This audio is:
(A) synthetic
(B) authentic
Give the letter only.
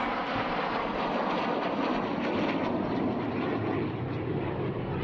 B